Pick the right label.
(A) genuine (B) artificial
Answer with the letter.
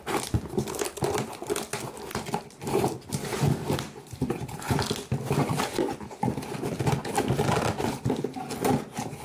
A